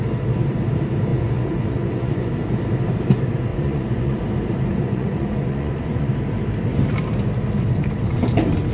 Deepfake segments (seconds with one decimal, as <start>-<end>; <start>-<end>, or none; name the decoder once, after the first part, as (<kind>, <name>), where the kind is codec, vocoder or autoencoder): 1.1-2.3 (vocoder, Vocos); 3.5-4.2; 4.7-6.1